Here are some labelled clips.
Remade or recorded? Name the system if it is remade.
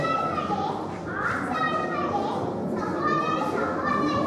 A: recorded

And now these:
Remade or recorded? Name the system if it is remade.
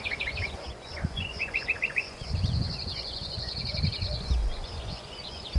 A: remade, vocoder, Vocos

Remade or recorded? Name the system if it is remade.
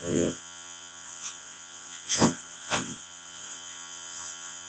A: remade, vocoder, WaveNeXt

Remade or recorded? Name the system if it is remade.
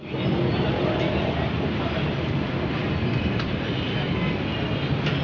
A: recorded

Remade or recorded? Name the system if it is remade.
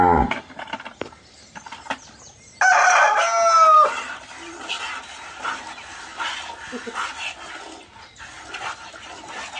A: recorded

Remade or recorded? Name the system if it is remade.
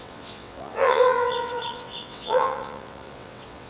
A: remade, vocoder, WaveNeXt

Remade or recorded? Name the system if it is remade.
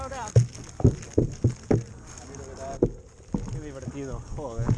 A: recorded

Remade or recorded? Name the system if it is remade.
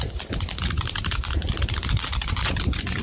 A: recorded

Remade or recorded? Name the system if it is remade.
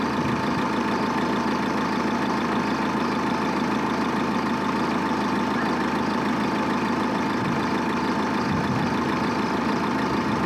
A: recorded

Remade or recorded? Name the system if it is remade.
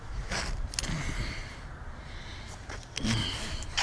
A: recorded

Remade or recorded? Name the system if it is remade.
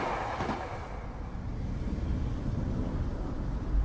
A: recorded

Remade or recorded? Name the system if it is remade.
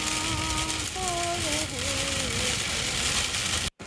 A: recorded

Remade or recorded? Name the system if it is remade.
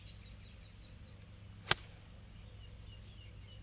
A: recorded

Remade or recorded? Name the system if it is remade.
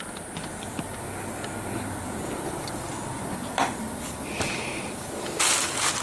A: remade, vocoder, BigVGAN v2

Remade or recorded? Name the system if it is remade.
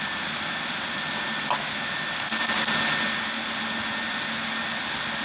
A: recorded